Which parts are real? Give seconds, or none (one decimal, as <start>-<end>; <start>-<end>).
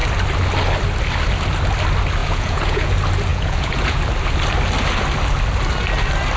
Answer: 0.0-2.2; 2.9-3.3; 4.0-6.4